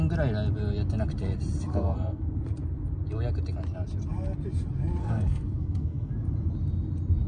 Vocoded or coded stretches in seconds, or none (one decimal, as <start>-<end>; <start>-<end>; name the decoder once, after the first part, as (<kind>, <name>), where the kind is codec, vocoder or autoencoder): 1.7-2.4 (codec, SNAC); 5.0-6.1